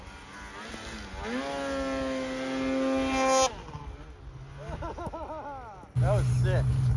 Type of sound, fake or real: real